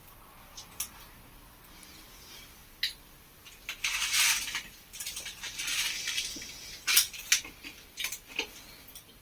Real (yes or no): yes